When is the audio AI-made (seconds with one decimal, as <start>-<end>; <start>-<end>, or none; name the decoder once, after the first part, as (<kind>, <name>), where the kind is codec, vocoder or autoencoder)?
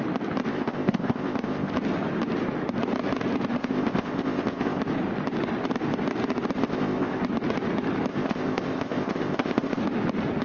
0.5-1.7 (codec, ZipCodec); 3.6-4.8; 6.6-7.2; 8.1-9.8